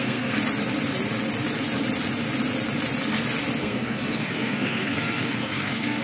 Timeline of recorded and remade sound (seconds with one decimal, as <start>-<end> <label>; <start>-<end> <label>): 0.0-0.4 remade; 0.4-3.6 recorded; 3.6-6.0 remade